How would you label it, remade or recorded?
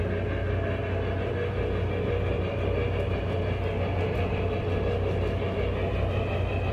recorded